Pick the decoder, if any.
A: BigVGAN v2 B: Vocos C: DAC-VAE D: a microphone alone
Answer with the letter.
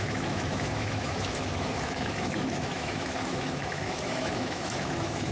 C